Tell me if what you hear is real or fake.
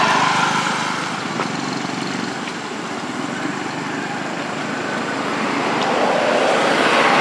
real